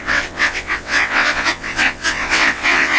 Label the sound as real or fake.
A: fake